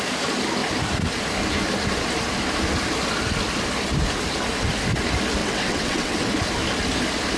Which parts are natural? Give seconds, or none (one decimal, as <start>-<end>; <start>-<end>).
0.0-5.4; 6.3-7.4